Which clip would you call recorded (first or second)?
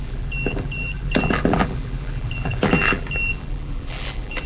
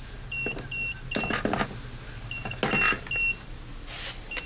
second